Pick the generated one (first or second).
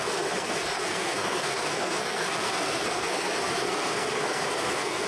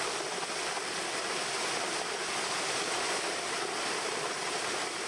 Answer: first